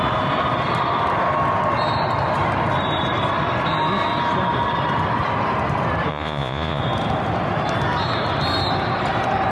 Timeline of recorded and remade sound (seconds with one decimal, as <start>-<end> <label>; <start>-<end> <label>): 0.0-6.1 recorded; 6.1-6.8 remade; 6.8-9.5 recorded